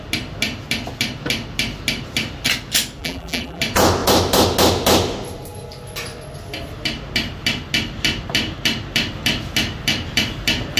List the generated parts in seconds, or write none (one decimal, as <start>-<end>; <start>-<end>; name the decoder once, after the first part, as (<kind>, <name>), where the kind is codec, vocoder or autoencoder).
3.0-3.6 (vocoder, BigVGAN v2)